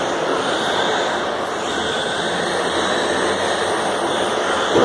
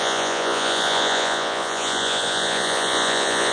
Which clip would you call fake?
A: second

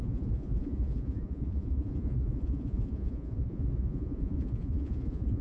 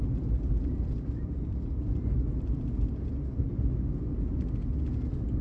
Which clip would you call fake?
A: first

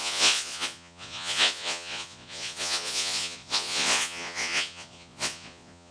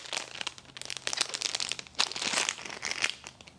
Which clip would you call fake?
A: first